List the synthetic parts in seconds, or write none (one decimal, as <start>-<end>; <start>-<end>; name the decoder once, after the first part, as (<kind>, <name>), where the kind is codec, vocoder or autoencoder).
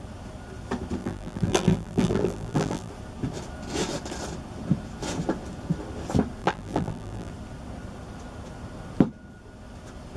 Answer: 1.0-2.9 (vocoder, BigVGAN v2); 6.4-7.3